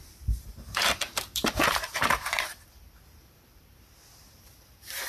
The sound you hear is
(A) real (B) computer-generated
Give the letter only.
B